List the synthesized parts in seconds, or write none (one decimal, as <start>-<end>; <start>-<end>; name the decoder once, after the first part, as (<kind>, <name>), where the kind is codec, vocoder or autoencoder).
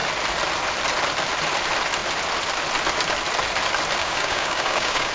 4.0-5.1 (codec, DAC)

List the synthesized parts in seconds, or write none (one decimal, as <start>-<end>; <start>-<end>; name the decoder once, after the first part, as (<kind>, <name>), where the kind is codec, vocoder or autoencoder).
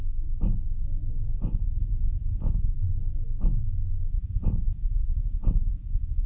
1.4-2.7 (vocoder, Vocos); 4.1-6.3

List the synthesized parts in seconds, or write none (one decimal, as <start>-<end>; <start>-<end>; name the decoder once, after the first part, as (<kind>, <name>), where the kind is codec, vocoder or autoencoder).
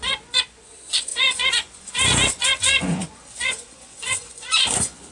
0.0-5.1 (vocoder, Vocos)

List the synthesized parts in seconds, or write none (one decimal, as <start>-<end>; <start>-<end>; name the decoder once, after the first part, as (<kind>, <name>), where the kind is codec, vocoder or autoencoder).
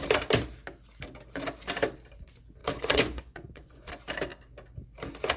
2.6-3.9 (vocoder, Vocos)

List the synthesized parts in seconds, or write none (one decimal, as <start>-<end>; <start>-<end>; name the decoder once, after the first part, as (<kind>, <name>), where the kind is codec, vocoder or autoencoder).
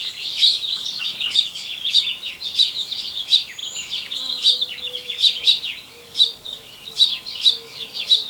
0.0-8.3 (codec, DAC)